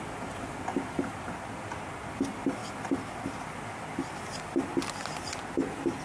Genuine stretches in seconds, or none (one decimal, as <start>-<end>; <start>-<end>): 0.0-6.0